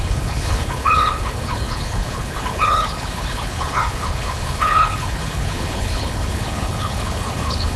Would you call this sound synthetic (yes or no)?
yes